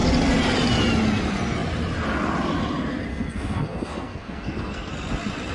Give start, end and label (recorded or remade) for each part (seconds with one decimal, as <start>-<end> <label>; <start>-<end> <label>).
0.0-3.1 recorded; 3.1-4.9 remade; 4.9-5.5 recorded